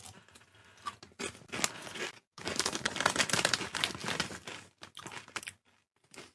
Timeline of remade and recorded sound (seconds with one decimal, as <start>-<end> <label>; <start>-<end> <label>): 0.0-1.8 recorded; 1.8-2.9 remade; 2.9-6.3 recorded